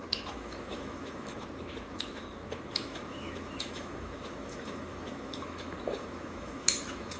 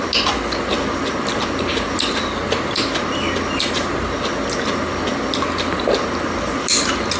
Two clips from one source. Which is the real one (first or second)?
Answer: second